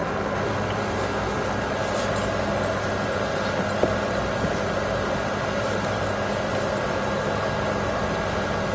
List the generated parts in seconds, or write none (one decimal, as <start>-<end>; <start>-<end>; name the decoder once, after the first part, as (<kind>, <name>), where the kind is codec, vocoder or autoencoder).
none